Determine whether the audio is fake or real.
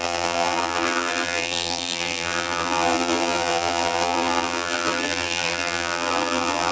fake